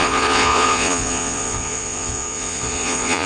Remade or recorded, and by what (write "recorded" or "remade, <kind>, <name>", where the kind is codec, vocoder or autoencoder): remade, vocoder, Vocos